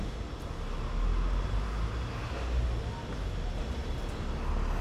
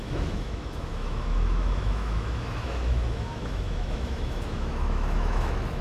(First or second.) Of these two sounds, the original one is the first